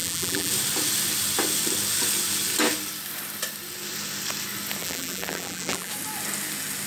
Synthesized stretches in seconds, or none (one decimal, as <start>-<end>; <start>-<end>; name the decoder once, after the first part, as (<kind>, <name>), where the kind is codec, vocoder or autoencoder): 0.0-0.5 (vocoder, BigVGAN v2); 4.8-5.9